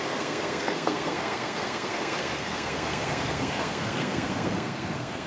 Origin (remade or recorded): remade